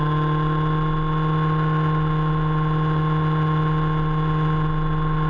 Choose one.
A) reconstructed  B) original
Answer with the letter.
B